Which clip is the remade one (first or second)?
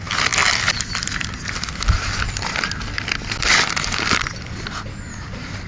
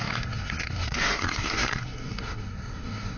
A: second